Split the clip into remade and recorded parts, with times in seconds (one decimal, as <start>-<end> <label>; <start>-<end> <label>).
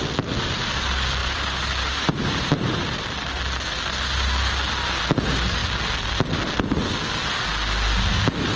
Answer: 0.0-1.2 recorded; 1.2-3.4 remade; 3.4-8.6 recorded